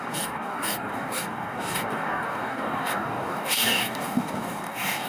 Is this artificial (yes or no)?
yes